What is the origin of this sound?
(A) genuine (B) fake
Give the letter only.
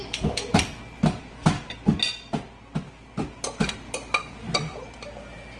A